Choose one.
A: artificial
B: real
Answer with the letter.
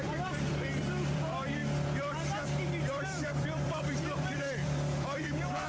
A